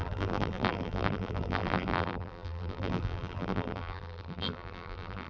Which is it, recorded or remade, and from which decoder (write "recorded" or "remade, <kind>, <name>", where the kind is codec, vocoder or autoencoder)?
remade, vocoder, BigVGAN v2